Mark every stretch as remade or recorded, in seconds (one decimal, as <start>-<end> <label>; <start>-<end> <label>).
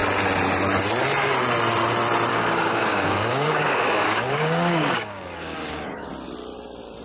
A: 0.0-2.3 recorded; 2.3-6.1 remade; 6.1-7.0 recorded